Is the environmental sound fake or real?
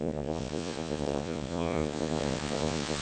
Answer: fake